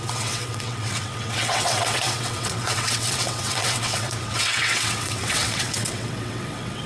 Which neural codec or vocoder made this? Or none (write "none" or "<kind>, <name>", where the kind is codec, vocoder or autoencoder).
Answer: vocoder, WaveNeXt